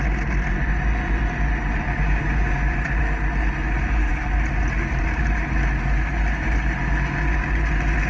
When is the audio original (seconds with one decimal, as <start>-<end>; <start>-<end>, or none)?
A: 0.0-1.7; 3.0-4.1; 5.2-8.1